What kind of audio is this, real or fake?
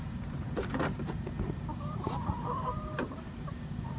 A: fake